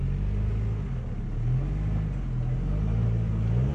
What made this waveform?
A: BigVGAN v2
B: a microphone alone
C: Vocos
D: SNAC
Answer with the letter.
B